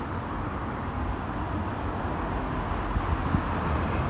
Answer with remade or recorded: recorded